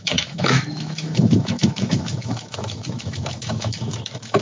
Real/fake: fake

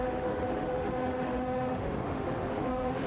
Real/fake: fake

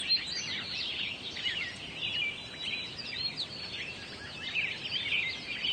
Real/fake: real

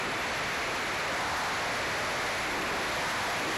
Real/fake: real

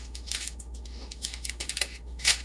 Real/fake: fake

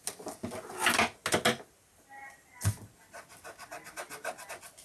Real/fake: real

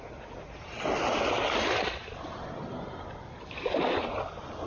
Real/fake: real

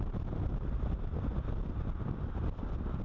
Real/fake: real